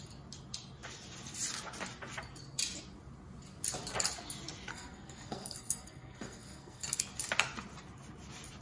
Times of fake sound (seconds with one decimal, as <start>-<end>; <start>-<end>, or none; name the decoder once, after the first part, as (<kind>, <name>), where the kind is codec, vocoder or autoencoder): 4.7-7.0 (codec, SNAC)